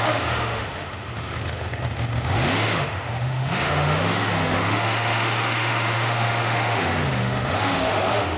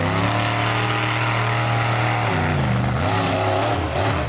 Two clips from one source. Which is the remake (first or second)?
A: first